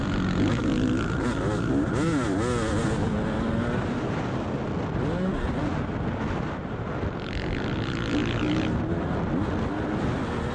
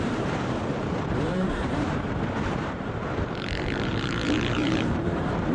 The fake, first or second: second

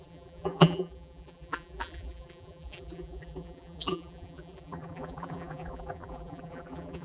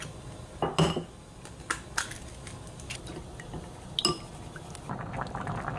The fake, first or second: first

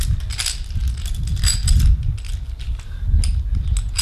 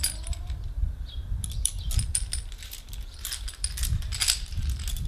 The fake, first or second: second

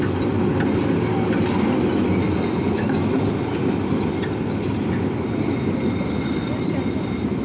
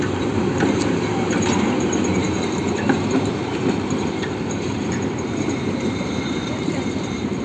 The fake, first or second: second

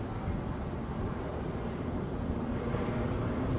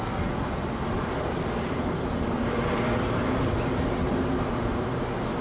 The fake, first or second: first